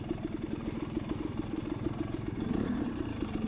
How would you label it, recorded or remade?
remade